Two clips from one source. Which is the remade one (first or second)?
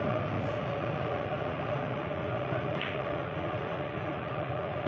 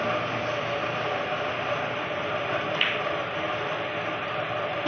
first